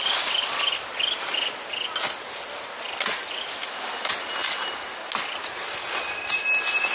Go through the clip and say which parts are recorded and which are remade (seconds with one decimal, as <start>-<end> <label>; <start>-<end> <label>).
0.0-6.9 recorded